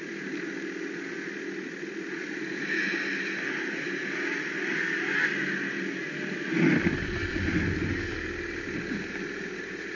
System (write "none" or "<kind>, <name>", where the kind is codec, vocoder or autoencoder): none